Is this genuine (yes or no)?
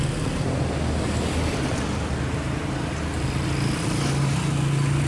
yes